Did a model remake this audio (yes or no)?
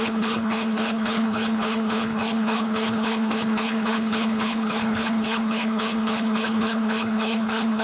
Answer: yes